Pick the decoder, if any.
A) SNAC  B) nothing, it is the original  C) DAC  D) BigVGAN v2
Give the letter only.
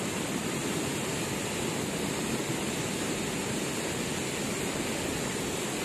B